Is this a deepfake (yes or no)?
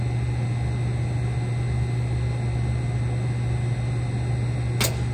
no